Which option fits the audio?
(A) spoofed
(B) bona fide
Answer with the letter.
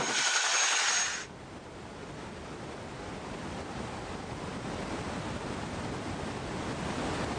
B